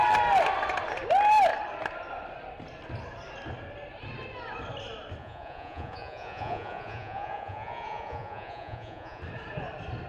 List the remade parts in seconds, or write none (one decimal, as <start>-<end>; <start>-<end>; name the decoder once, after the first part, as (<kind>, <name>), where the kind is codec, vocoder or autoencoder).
5.2-9.2 (vocoder, Vocos)